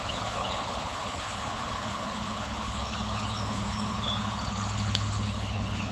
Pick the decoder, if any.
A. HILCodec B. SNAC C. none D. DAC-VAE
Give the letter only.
A